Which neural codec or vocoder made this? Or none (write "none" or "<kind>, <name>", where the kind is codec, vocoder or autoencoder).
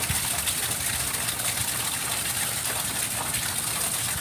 none